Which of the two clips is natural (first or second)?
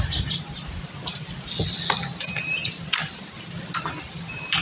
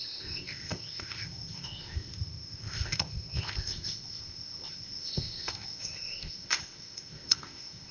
first